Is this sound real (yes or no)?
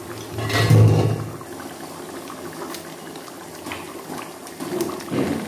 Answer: yes